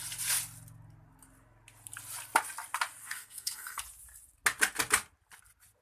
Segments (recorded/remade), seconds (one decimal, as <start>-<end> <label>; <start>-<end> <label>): 0.0-3.0 recorded; 3.0-3.8 remade; 3.8-5.8 recorded